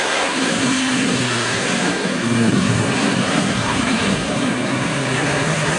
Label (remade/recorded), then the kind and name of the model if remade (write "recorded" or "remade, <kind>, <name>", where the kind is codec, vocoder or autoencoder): remade, codec, SNAC